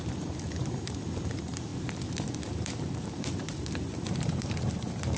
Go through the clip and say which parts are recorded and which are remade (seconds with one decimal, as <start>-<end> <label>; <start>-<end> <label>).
0.0-1.7 remade; 1.7-2.4 recorded; 2.4-5.2 remade